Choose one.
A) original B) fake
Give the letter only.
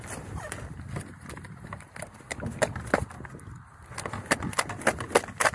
A